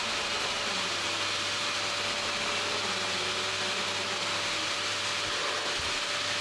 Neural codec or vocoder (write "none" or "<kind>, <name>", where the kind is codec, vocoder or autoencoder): none